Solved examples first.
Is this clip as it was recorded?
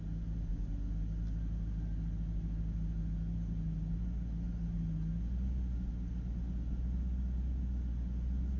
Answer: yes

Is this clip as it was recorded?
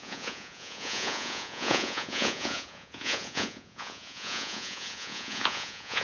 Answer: no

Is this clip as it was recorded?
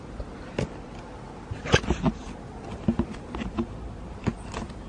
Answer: yes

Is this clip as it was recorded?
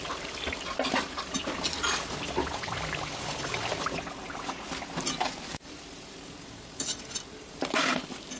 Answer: no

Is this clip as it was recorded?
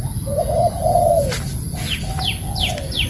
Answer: yes